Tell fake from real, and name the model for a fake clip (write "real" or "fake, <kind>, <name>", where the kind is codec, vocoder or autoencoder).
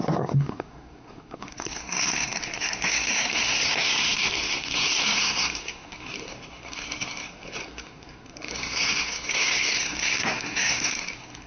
fake, codec, SNAC